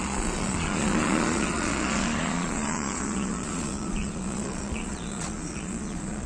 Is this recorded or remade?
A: remade